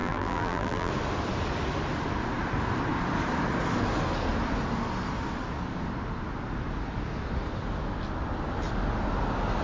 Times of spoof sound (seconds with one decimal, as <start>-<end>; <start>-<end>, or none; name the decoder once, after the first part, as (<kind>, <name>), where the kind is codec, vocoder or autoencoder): 0.0-0.9 (vocoder, BigVGAN v2)